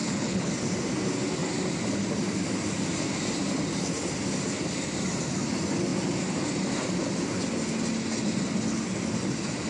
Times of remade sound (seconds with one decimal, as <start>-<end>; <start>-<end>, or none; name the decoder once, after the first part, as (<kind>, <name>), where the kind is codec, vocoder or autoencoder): 0.0-0.5 (codec, HILCodec)